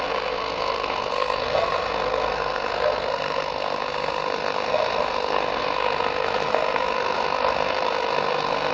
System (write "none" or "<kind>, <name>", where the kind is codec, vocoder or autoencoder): codec, SNAC